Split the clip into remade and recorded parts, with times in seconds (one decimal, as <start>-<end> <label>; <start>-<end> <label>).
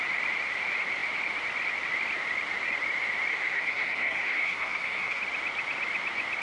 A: 0.0-3.3 recorded; 3.3-5.2 remade; 5.2-6.4 recorded